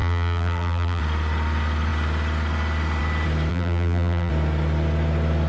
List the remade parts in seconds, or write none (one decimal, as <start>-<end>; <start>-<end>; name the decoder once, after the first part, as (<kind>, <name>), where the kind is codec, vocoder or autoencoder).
0.0-1.0 (vocoder, BigVGAN v2); 3.5-4.3